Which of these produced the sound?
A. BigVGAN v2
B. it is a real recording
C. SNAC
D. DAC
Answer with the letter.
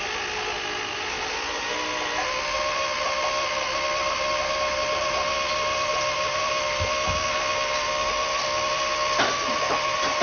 B